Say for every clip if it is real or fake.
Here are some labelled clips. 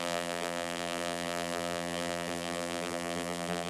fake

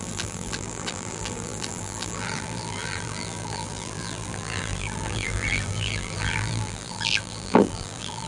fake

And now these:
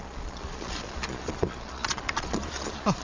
fake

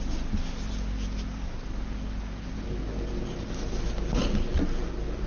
real